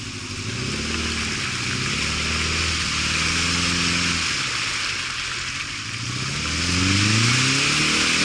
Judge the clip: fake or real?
real